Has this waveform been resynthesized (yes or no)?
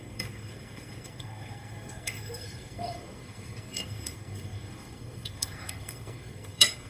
yes